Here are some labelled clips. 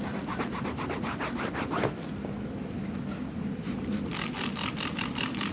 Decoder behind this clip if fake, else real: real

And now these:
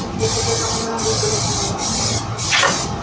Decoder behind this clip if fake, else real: real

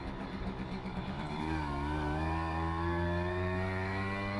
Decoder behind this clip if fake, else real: fake, codec, DAC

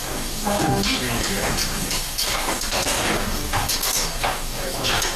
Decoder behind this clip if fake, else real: fake, codec, DAC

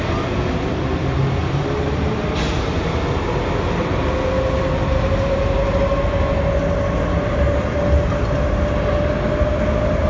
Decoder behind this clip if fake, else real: real